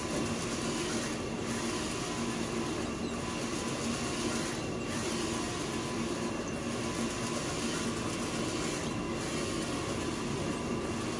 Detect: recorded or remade recorded